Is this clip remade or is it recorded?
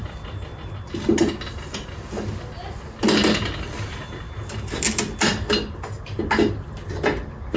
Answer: recorded